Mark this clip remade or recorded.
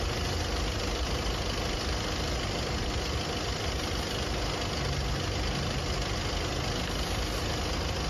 recorded